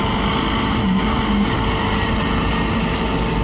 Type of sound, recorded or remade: recorded